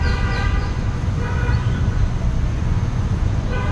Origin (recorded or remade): remade